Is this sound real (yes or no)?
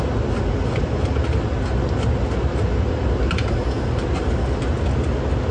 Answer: yes